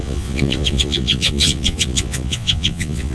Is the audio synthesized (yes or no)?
yes